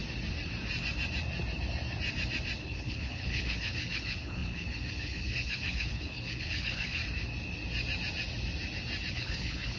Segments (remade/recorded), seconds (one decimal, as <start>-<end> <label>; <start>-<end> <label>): 0.0-2.6 recorded; 2.6-7.0 remade; 7.0-9.1 recorded; 9.1-9.8 remade